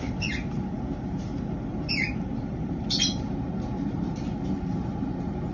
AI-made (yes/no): yes